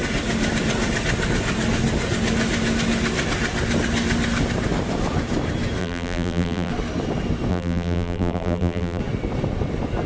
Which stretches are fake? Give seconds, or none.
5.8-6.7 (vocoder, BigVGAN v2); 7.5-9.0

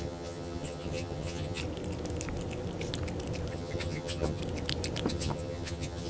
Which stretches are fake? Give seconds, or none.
0.0-1.6 (vocoder, HiFi-GAN); 3.5-4.4; 5.1-6.1

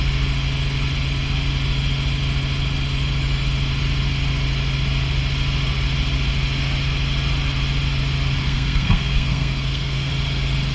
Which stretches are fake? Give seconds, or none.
8.4-10.1 (codec, SNAC)

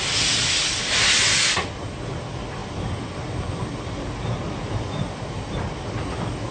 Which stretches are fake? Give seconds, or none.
none

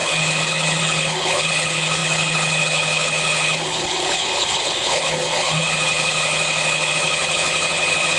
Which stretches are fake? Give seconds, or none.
0.0-8.2 (codec, HILCodec)